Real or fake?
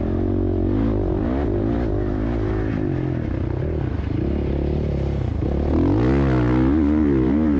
real